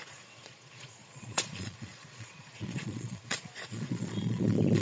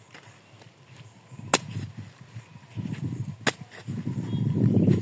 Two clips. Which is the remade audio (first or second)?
first